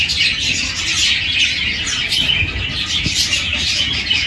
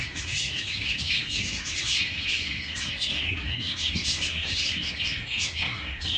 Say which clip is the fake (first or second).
second